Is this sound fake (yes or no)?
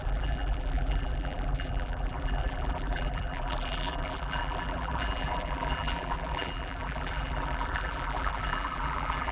yes